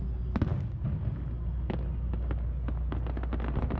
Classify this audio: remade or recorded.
recorded